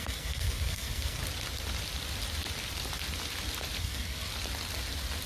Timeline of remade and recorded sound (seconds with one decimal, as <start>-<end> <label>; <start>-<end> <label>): 0.0-1.2 remade; 1.2-3.8 recorded; 3.8-4.3 remade; 4.3-5.3 recorded